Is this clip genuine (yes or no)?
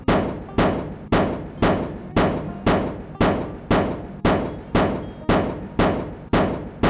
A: yes